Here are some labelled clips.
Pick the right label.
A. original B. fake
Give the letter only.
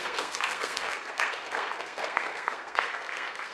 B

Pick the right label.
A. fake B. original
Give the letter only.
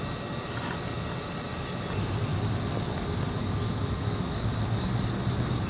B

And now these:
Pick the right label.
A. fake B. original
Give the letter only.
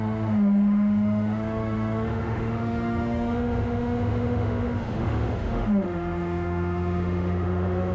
A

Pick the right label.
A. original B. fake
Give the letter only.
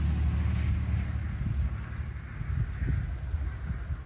A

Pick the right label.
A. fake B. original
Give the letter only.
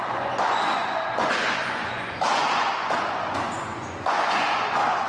A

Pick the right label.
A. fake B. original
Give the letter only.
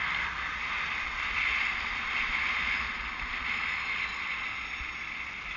B